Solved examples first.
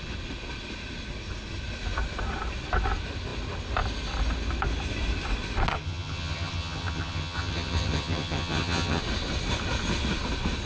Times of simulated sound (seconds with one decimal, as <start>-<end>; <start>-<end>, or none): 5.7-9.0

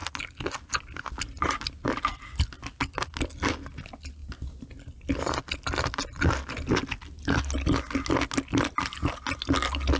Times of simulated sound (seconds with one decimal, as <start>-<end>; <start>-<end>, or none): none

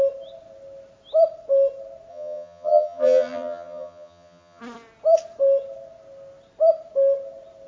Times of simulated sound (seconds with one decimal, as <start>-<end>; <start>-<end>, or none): 2.1-4.6

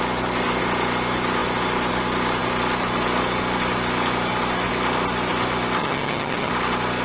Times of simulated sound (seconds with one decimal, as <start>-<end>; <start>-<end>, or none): 5.8-6.5

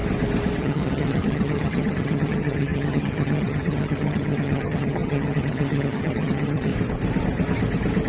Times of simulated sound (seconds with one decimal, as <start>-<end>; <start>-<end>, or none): 0.6-6.7